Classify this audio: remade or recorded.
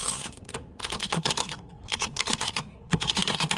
remade